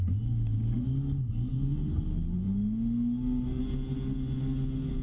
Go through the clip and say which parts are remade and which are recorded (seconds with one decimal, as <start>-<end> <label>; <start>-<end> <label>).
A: 0.0-1.5 recorded; 1.5-2.1 remade; 2.1-5.0 recorded